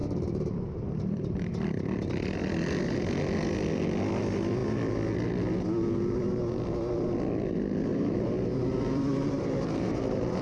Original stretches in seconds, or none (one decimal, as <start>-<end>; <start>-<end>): 1.2-7.9; 10.0-10.4